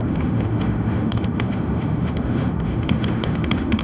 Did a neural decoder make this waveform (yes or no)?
yes